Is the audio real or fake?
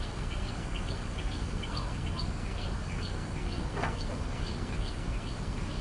fake